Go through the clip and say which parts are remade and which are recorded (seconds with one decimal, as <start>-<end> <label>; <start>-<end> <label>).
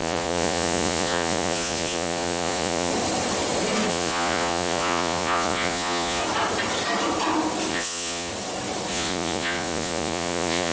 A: 0.0-2.9 remade; 2.9-3.9 recorded; 3.9-6.2 remade; 6.2-7.7 recorded; 7.7-8.3 remade; 8.3-8.9 recorded; 8.9-10.7 remade